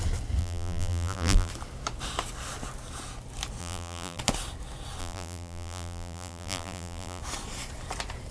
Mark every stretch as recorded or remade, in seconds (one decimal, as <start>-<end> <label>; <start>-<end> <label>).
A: 0.0-0.4 recorded; 0.4-1.5 remade; 1.5-3.6 recorded; 3.6-4.2 remade; 4.2-5.0 recorded; 5.0-7.2 remade; 7.2-8.3 recorded